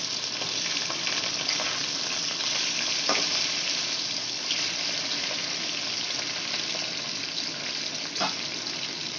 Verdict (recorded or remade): recorded